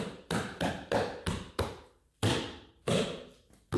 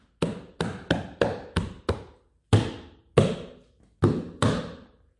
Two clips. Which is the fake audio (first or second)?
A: first